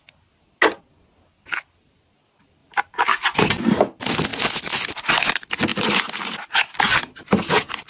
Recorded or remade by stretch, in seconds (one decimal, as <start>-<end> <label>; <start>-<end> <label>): 0.0-2.6 recorded; 2.6-3.4 remade; 3.4-7.9 recorded